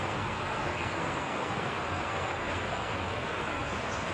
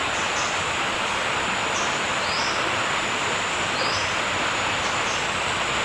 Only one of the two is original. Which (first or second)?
second